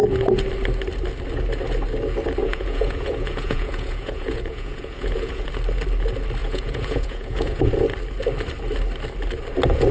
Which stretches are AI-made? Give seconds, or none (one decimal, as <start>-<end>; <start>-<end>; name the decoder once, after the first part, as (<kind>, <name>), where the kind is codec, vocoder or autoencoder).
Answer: 2.4-5.5 (vocoder, Vocos); 6.4-7.7